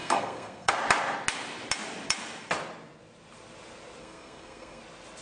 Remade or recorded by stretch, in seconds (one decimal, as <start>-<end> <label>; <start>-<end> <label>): 0.0-0.7 remade; 0.7-4.0 recorded; 4.0-4.8 remade; 4.8-5.2 recorded